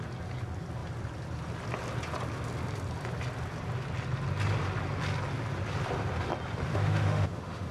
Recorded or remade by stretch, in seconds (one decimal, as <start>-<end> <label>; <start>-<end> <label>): 0.0-6.7 recorded; 6.7-7.7 remade